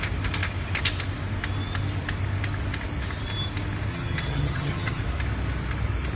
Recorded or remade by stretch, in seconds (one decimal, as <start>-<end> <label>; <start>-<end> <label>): 0.0-3.9 recorded; 3.9-5.0 remade; 5.0-6.2 recorded